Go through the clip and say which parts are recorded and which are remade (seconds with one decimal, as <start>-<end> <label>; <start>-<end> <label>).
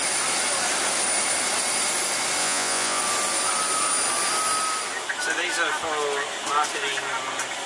0.0-2.4 recorded; 2.4-3.0 remade; 3.0-7.7 recorded